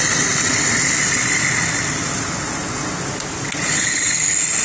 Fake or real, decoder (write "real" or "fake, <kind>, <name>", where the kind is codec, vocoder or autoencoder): real